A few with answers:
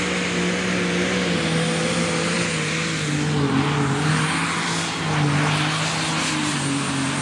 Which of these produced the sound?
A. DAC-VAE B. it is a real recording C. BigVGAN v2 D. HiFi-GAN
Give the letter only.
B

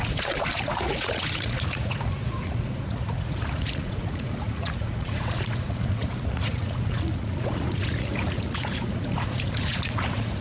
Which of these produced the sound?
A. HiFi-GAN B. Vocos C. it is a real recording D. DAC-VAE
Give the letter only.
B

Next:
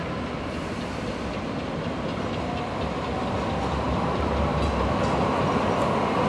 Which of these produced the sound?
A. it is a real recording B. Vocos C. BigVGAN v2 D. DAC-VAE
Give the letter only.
A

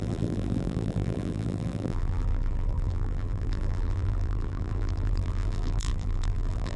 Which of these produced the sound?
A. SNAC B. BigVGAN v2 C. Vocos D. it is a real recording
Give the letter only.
B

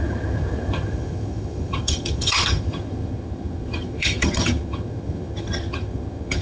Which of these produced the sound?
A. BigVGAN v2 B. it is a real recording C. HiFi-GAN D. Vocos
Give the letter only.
C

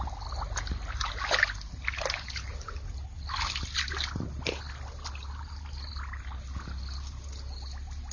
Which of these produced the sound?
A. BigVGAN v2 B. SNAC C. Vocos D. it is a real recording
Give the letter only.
D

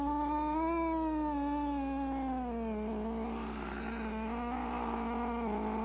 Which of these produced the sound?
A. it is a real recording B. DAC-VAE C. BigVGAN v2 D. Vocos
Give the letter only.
A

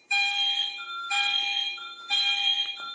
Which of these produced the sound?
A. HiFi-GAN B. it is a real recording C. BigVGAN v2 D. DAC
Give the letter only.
C